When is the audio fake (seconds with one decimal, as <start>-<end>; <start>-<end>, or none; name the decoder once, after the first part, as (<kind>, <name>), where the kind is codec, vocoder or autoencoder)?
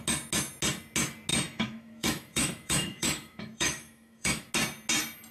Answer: 1.3-4.5 (autoencoder, DAC-VAE)